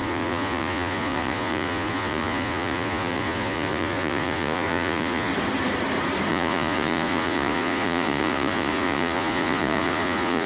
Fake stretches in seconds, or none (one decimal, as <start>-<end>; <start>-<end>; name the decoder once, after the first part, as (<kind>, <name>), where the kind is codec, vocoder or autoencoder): 0.0-5.3 (vocoder, Vocos); 6.3-10.5